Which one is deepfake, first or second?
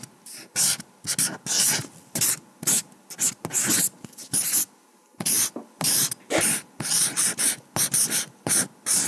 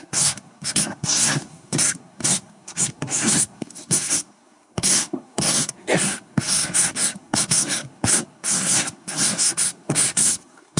second